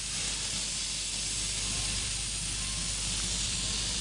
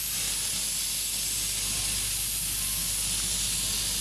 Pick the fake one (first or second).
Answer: first